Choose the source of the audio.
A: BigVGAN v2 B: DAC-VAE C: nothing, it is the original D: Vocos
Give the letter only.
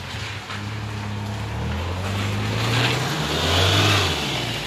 C